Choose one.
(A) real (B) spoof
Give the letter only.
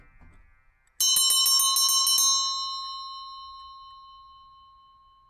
A